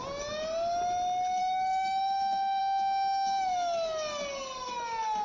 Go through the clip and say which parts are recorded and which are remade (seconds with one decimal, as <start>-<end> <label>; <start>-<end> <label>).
0.0-1.4 recorded; 1.4-2.6 remade; 2.6-5.2 recorded